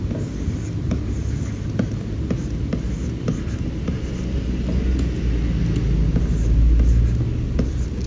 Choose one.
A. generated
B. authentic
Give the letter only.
B